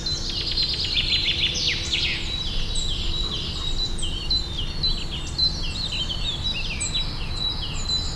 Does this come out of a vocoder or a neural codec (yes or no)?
no